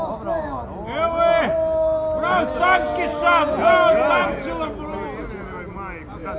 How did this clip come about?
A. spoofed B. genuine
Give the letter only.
B